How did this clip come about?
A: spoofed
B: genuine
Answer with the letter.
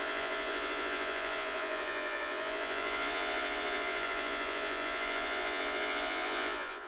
A